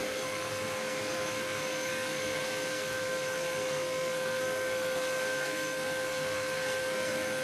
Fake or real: fake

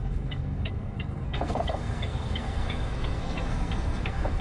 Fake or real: fake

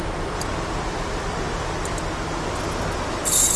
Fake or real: real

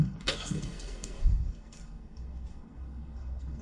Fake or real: fake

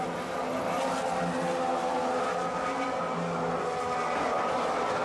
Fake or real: real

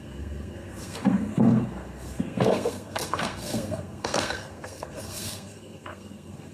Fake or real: fake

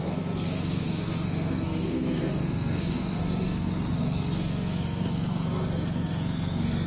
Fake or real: fake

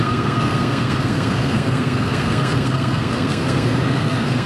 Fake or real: fake